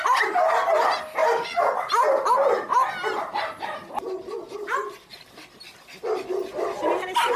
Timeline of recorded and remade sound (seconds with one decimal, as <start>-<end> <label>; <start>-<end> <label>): 0.0-7.4 recorded